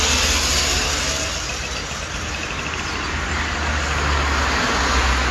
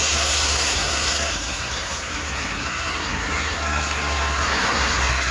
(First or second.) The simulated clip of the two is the second